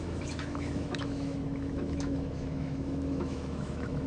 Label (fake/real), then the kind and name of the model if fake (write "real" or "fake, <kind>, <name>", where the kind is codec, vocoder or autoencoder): fake, autoencoder, DAC-VAE